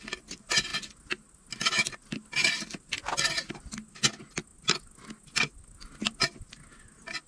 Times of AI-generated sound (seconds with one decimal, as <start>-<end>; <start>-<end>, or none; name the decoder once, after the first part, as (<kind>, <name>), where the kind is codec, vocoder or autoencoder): none